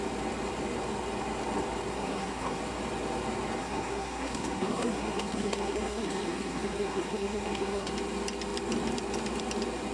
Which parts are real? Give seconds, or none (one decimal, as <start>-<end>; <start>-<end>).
0.0-1.9; 2.6-3.6; 7.9-9.9